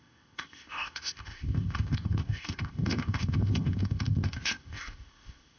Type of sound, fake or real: fake